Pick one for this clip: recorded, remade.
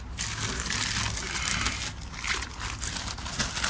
recorded